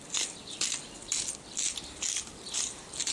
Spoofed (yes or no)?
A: no